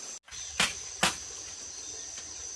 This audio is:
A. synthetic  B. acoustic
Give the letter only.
B